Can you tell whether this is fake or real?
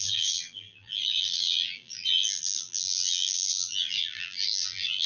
fake